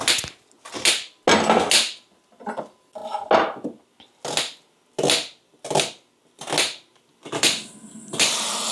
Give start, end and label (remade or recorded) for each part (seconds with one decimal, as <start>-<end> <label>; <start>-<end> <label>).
0.0-8.7 recorded